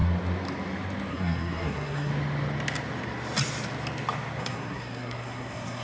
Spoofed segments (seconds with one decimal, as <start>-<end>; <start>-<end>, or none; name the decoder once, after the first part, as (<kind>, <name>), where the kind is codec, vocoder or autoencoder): 1.1-2.1 (codec, SNAC); 4.4-5.8